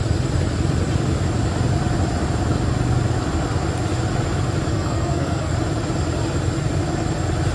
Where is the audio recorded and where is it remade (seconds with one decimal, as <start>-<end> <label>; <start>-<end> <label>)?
0.0-4.7 recorded; 4.7-5.5 remade; 5.5-7.5 recorded